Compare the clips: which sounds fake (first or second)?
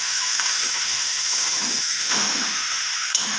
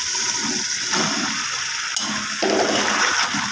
first